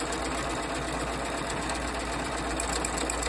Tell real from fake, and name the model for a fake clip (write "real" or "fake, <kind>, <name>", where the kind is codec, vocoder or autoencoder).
real